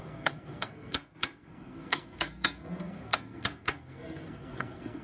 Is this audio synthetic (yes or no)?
yes